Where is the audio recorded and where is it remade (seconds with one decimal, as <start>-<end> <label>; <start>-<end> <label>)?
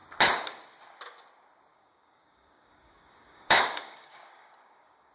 0.0-1.7 recorded; 1.7-5.1 remade